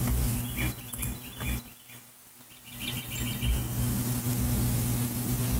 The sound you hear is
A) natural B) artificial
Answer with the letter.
A